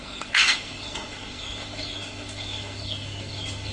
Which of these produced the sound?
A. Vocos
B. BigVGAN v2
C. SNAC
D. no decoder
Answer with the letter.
C